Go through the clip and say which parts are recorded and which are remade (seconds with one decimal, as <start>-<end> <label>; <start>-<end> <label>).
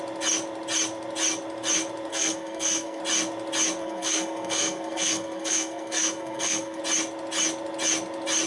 0.0-2.1 recorded; 2.1-3.0 remade; 3.0-3.8 recorded; 3.8-6.8 remade; 6.8-8.5 recorded